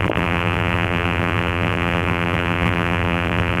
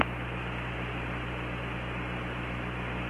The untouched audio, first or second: second